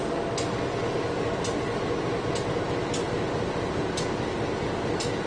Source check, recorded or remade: recorded